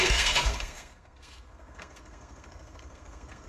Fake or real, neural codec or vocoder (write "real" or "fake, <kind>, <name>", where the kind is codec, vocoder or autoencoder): fake, codec, SNAC